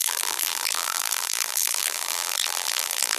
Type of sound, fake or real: fake